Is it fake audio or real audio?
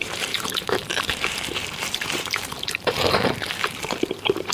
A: fake